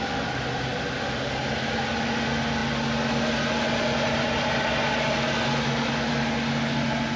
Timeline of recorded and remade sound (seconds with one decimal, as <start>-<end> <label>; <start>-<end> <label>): 0.0-7.2 recorded